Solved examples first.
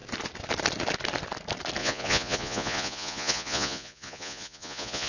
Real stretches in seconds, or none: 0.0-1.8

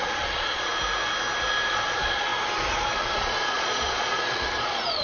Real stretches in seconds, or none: 0.7-1.7; 2.3-3.2

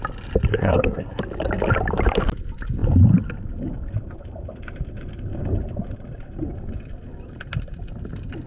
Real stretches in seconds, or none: 0.0-0.5; 1.2-8.5